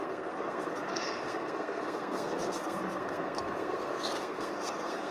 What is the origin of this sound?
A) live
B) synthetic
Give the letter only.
B